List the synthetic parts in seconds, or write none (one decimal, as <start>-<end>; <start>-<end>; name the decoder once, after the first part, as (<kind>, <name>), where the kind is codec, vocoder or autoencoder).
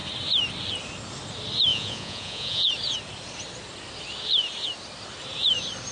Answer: 1.7-2.7 (vocoder, Vocos)